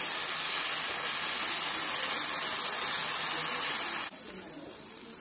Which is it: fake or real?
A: real